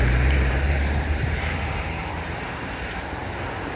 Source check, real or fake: fake